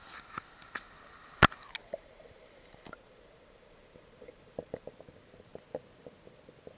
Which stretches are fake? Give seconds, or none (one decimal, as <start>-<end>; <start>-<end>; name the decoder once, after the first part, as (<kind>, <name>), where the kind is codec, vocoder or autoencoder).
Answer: 1.8-4.9 (vocoder, BigVGAN v2)